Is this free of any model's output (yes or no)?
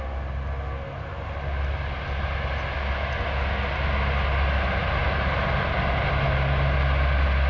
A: yes